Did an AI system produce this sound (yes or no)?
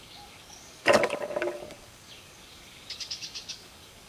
yes